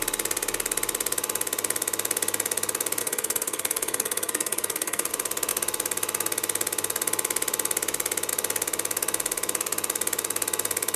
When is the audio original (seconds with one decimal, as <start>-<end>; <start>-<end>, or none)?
0.0-3.0; 5.1-11.0